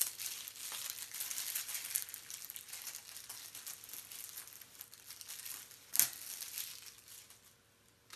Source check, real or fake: real